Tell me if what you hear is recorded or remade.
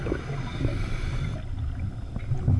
recorded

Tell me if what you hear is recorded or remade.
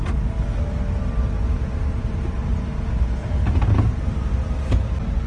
recorded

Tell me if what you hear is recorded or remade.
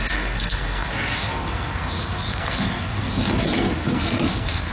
remade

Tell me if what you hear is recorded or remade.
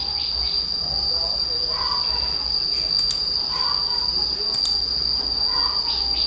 recorded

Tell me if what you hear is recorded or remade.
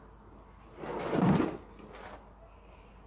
recorded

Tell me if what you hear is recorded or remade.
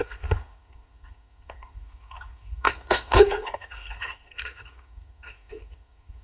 remade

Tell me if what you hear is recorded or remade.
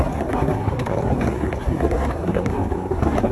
remade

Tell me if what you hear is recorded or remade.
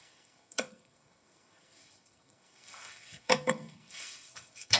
remade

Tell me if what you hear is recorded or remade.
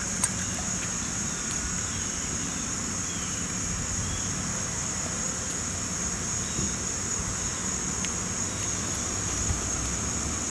recorded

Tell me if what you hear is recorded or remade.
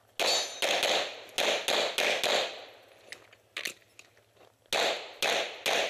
recorded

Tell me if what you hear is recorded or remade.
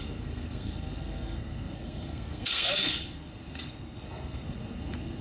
remade